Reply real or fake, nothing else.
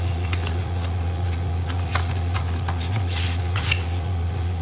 fake